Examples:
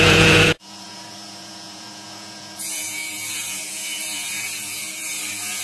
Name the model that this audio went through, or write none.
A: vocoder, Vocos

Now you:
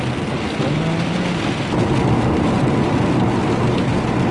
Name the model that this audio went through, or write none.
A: none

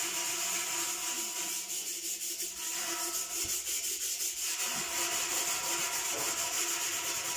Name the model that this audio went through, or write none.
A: none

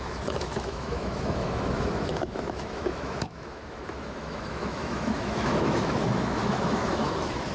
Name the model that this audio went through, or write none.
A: autoencoder, DAC-VAE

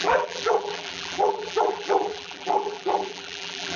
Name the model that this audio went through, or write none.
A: vocoder, BigVGAN v2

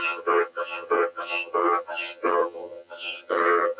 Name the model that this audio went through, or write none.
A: vocoder, HiFi-GAN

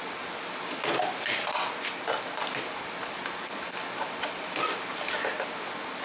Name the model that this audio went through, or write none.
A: none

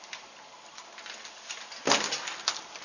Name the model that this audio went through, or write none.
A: none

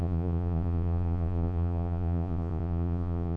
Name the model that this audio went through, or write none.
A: vocoder, Vocos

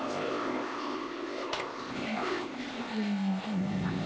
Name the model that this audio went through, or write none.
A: codec, ZipCodec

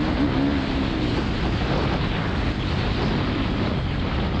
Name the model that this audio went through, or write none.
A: none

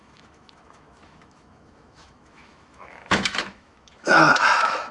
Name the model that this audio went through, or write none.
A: autoencoder, DAC-VAE